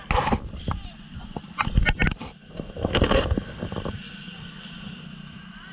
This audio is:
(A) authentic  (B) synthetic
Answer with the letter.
A